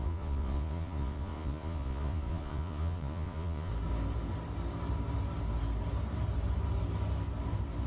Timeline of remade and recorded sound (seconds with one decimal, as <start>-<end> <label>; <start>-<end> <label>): 0.0-3.7 remade; 3.7-7.9 recorded